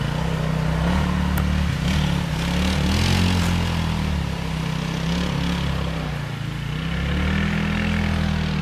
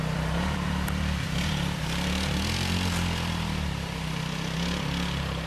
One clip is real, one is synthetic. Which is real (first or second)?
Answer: first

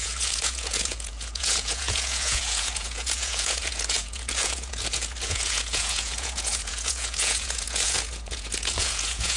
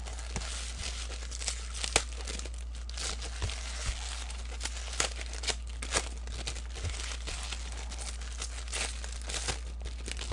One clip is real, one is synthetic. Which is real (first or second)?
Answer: second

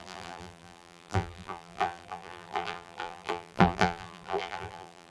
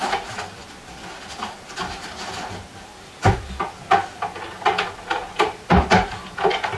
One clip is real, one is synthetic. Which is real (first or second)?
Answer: second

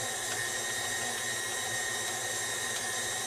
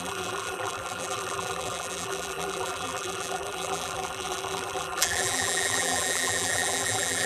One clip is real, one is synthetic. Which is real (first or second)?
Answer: first